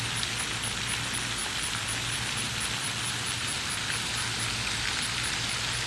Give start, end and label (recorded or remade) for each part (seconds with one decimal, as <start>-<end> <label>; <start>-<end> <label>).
0.0-1.4 recorded; 1.4-2.4 remade; 2.4-5.9 recorded